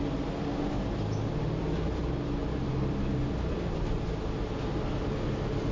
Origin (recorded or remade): recorded